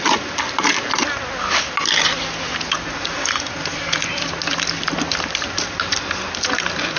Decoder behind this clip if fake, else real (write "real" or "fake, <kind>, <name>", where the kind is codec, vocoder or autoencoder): real